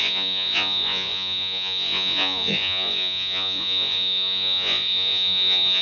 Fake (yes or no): yes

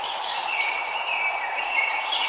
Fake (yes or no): yes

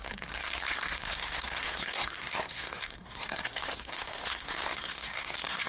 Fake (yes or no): yes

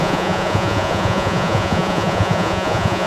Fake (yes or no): yes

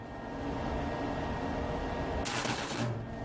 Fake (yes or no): no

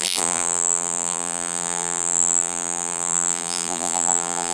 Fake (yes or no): yes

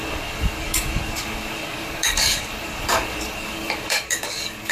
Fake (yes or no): yes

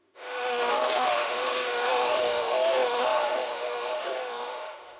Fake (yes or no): yes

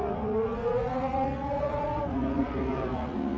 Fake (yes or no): yes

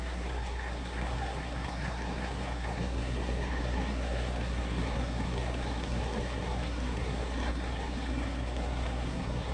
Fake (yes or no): yes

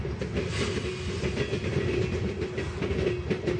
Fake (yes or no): no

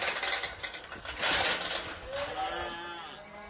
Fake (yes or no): no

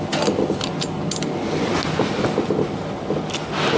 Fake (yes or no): no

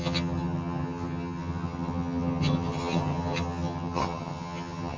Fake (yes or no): yes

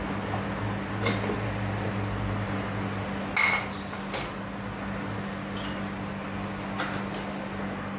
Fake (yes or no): no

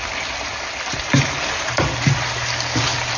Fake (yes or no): no